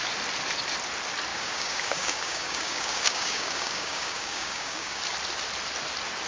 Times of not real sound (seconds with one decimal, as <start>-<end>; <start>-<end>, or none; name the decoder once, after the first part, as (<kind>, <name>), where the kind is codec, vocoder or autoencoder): 1.3-5.0 (codec, DAC)